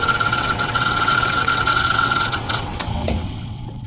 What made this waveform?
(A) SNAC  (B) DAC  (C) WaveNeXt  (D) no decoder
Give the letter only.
C